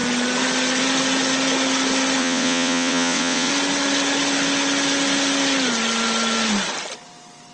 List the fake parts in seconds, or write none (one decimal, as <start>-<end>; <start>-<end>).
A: 2.2-3.5